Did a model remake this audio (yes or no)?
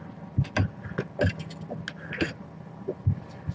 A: no